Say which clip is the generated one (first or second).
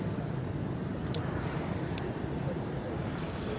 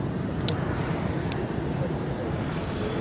first